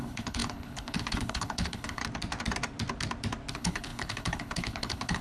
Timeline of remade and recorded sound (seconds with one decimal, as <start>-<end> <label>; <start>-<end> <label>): 0.0-2.0 remade; 2.0-3.5 recorded; 3.5-5.2 remade